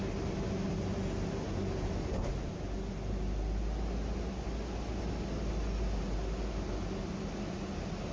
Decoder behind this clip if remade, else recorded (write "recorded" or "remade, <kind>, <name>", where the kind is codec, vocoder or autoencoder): recorded